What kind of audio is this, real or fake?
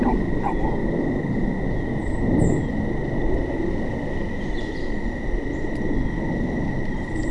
real